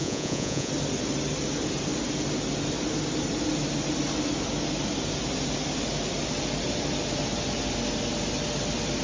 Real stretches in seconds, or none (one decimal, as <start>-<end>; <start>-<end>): 0.7-9.0